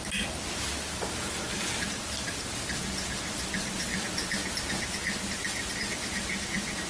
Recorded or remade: recorded